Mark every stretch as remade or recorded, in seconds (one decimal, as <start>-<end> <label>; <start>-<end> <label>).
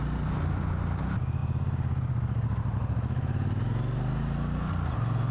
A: 0.0-5.3 recorded